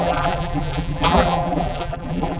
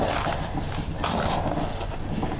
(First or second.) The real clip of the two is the second